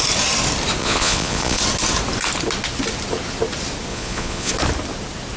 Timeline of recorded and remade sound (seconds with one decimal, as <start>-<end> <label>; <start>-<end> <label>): 0.0-0.8 recorded; 0.8-1.6 remade; 1.6-3.9 recorded; 3.9-4.5 remade; 4.5-5.4 recorded